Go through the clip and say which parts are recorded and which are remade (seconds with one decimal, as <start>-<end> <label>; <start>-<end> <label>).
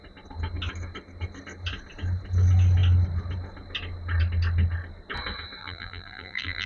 0.0-5.6 recorded; 5.6-6.7 remade